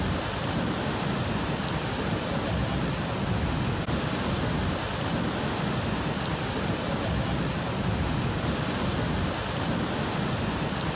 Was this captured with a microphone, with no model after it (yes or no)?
yes